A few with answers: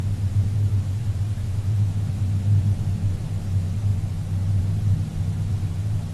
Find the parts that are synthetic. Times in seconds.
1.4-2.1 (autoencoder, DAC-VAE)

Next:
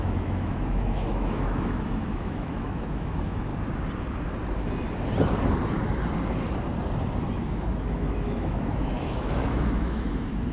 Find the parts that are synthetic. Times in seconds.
0.0-3.5 (autoencoder, DAC-VAE); 7.3-10.5

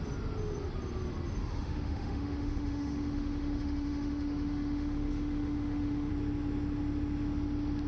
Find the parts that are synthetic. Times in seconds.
1.4-6.1 (autoencoder, DAC-VAE)

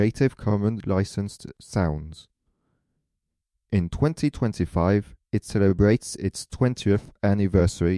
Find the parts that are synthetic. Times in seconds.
0.0-8.0 (autoencoder, DAC-VAE)